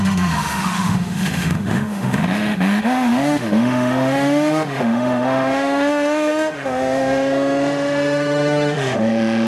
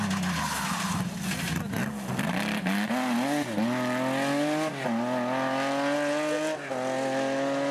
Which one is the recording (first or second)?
second